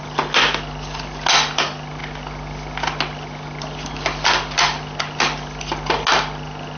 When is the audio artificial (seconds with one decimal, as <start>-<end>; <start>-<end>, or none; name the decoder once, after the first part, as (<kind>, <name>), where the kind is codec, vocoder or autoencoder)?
none